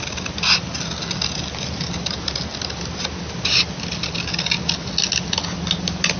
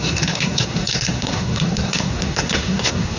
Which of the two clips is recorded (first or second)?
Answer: first